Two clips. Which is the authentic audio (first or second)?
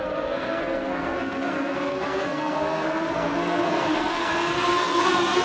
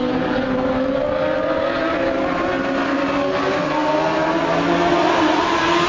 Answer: second